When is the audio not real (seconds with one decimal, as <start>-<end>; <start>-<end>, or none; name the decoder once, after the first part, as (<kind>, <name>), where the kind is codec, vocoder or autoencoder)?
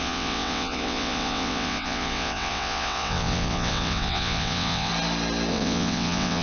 0.0-4.9 (vocoder, WaveNeXt); 5.5-6.4